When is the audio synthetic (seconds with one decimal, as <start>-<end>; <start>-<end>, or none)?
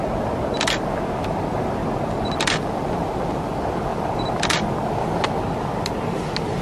none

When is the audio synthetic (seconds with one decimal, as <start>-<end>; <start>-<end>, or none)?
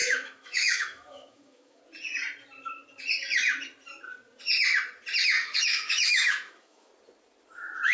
0.0-1.8; 5.4-6.9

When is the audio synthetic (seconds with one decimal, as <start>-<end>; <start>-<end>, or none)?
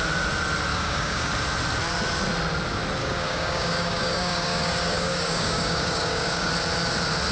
0.7-1.3; 3.0-6.5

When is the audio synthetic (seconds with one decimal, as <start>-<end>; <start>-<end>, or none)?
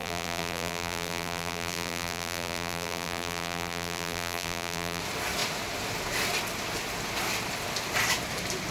0.0-5.0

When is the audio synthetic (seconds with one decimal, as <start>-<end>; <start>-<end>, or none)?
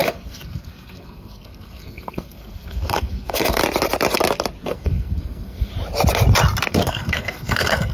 0.0-3.6; 4.6-5.7; 6.7-7.9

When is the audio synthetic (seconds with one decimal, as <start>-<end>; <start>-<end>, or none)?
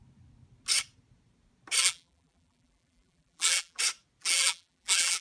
1.8-3.8; 4.2-5.2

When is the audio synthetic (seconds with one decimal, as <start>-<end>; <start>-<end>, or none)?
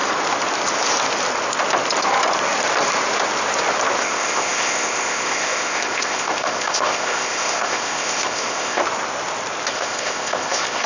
4.0-8.8; 9.7-10.9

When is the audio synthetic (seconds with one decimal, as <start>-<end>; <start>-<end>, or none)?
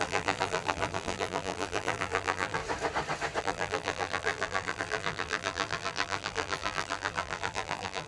0.0-2.6; 3.4-8.1